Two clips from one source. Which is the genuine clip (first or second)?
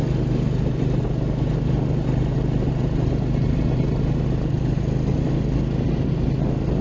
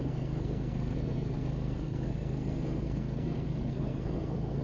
first